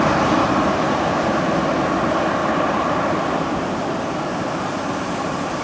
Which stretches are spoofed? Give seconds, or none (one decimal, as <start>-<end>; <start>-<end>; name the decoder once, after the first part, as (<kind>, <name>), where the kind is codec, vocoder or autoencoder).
0.4-1.4 (vocoder, BigVGAN v2); 2.4-5.6

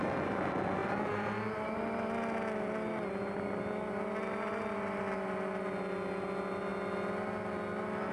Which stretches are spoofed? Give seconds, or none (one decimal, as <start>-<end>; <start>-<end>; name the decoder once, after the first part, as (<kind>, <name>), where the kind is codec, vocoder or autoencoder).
none

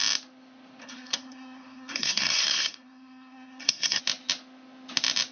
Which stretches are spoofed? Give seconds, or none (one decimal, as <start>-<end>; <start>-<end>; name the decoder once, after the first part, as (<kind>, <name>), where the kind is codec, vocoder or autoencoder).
0.8-4.0 (codec, SNAC)

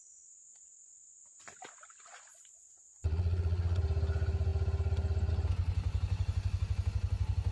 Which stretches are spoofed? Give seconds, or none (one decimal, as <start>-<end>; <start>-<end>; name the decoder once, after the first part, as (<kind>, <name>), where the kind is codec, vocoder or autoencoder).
2.3-3.8 (vocoder, Vocos)

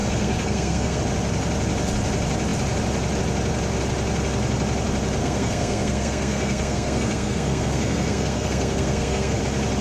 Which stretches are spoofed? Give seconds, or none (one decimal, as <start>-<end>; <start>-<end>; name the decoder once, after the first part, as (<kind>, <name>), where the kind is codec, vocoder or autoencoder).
0.0-1.0 (codec, SNAC); 5.2-9.4

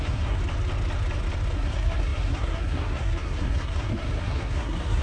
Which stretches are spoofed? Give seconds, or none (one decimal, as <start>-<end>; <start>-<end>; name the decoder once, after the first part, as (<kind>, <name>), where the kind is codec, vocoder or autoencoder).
0.0-0.4 (codec, SNAC); 1.5-5.0

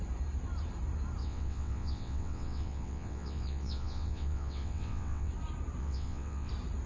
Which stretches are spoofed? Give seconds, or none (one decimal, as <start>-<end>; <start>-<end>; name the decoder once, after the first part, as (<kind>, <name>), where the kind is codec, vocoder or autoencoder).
1.2-5.3 (vocoder, WaveNeXt); 5.8-6.5

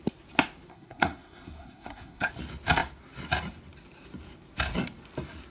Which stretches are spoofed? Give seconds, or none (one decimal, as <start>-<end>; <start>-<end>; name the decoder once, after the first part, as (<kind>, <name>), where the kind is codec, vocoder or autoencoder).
0.7-2.3 (codec, SNAC)